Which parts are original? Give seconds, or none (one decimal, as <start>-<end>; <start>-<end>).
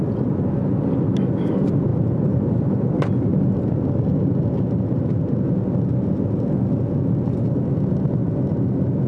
0.0-1.9; 2.7-9.1